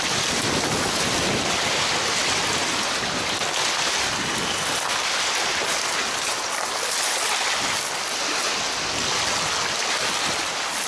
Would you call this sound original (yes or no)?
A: yes